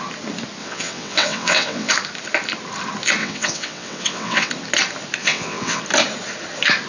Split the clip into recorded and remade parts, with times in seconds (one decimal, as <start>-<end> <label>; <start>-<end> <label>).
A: 0.0-0.6 recorded; 0.6-1.9 remade; 1.9-3.2 recorded; 3.2-4.5 remade; 4.5-5.2 recorded; 5.2-5.8 remade; 5.8-6.9 recorded